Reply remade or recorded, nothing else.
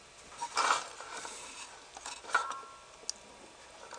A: recorded